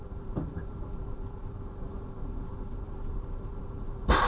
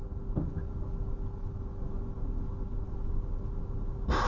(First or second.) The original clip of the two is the second